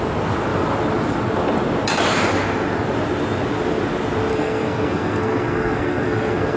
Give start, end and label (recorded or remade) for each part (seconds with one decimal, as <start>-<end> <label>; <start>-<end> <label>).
0.0-4.3 recorded; 4.3-6.6 remade